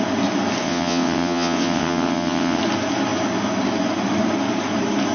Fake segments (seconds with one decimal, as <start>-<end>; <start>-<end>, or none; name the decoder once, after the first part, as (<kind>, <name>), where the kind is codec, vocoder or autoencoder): 0.6-2.6 (vocoder, WaveNeXt)